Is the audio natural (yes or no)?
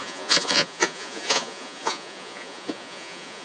no